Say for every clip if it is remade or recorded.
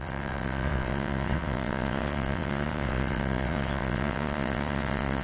remade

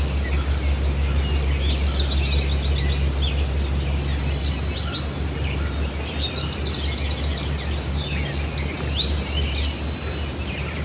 recorded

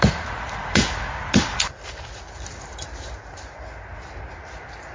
recorded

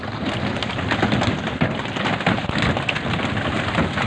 recorded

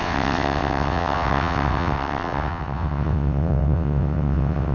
remade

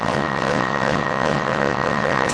remade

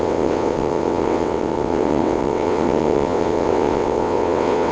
remade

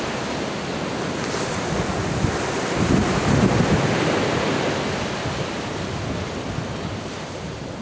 recorded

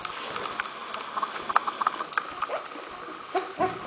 recorded